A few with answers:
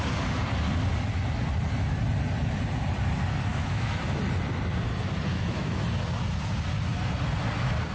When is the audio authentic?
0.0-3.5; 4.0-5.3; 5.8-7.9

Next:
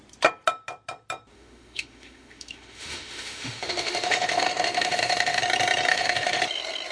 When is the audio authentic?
0.0-1.3; 5.4-5.9; 6.4-6.9

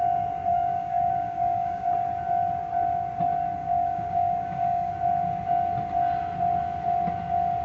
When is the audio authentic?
0.0-0.5; 1.9-3.6; 4.9-7.6

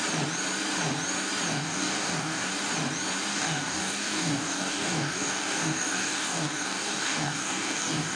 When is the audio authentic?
0.0-1.5; 2.5-3.3